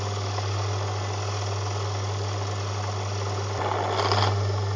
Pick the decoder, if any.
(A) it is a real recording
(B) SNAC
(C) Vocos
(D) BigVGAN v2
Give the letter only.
A